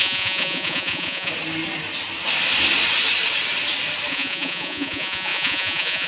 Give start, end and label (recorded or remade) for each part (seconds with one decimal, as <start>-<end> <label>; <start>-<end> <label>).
0.0-1.3 remade; 1.3-4.1 recorded; 4.1-6.1 remade